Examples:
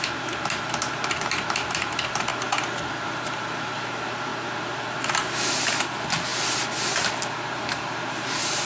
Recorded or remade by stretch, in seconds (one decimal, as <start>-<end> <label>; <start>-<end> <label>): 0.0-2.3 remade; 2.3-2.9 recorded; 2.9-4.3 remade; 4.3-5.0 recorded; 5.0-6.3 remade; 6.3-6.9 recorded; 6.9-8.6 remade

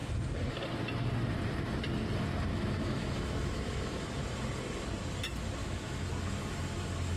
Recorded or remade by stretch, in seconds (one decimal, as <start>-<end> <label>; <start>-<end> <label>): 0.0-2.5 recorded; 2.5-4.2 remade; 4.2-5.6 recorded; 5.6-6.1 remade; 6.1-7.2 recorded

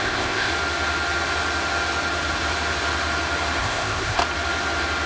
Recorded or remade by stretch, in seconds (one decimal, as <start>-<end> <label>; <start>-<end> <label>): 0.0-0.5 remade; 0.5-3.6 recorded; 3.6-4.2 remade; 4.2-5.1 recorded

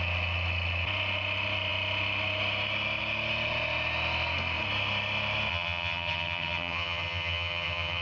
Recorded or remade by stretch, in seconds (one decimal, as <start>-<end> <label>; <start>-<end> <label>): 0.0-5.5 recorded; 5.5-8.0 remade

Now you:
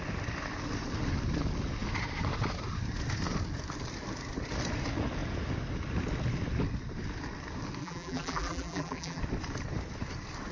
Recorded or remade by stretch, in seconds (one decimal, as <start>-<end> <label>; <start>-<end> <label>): 0.0-7.8 recorded; 7.8-9.2 remade; 9.2-10.5 recorded

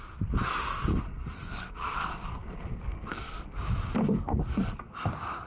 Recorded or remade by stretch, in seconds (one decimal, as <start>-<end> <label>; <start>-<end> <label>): 0.0-0.9 recorded; 0.9-3.4 remade; 3.4-4.0 recorded; 4.0-4.9 remade; 4.9-5.5 recorded